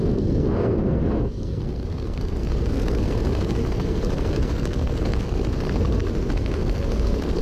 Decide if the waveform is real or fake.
fake